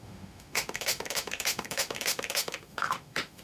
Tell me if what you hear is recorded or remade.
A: remade